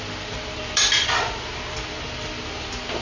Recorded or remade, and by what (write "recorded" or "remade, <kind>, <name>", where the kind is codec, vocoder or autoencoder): recorded